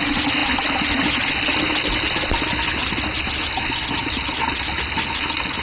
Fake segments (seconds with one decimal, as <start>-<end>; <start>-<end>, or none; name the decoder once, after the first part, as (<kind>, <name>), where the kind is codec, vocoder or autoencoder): none